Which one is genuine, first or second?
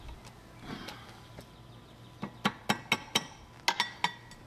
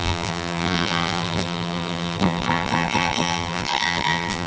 first